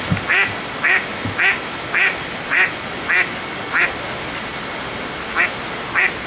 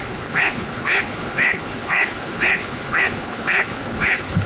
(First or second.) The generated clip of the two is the second